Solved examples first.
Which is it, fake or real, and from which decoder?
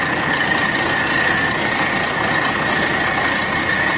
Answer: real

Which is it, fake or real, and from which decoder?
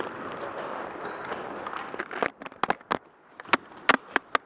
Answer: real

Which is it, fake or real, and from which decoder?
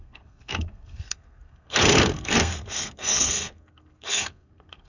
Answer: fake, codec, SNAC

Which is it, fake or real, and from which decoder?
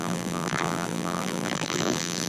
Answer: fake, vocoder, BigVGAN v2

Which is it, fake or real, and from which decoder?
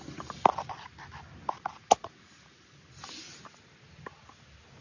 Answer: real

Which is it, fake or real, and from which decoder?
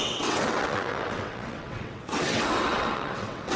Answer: fake, vocoder, WaveNeXt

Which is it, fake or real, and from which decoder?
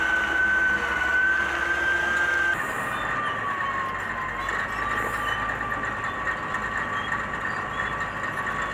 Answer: real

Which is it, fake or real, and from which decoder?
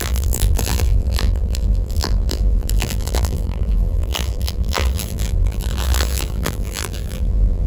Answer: fake, vocoder, BigVGAN v2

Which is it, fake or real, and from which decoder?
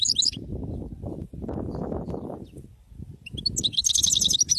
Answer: real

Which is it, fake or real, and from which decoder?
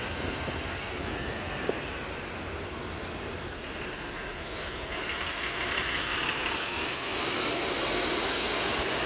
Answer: real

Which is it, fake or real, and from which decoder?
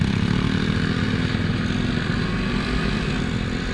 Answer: real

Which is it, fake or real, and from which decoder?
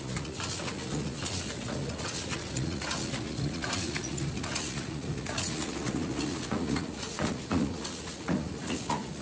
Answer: fake, vocoder, Vocos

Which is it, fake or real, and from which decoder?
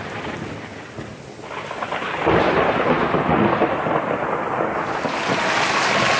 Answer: real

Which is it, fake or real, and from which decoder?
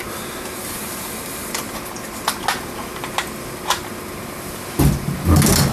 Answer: real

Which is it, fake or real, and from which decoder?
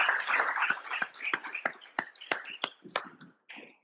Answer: real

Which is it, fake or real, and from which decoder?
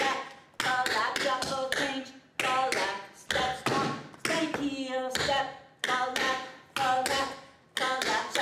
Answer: real